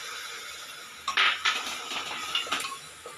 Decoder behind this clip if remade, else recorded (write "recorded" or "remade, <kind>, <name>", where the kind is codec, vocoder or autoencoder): recorded